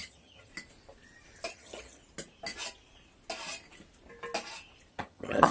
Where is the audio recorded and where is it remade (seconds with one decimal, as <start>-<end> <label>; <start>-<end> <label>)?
0.0-0.5 remade; 0.5-1.5 recorded; 1.5-2.0 remade; 2.0-4.9 recorded; 4.9-5.5 remade